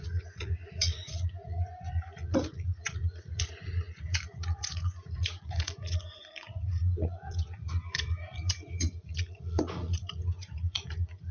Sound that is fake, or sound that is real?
fake